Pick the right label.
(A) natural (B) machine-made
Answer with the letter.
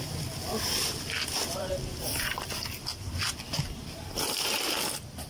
A